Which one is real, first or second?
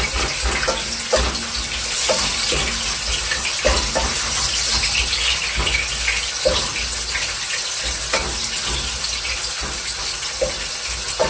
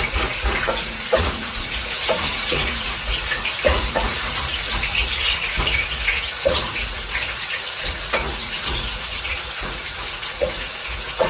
first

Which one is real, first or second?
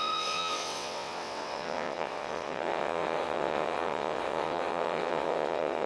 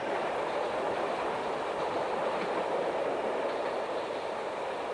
second